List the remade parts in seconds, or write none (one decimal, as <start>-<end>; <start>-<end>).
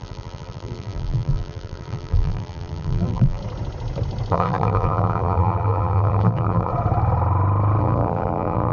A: 0.0-3.4; 4.3-6.7; 7.8-8.7